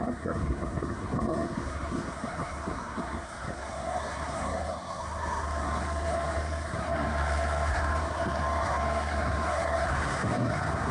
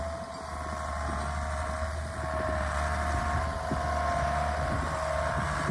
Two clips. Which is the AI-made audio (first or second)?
first